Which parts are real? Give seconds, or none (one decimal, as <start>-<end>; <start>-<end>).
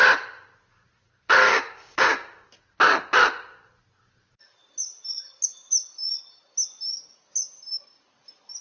0.0-1.4; 2.5-8.6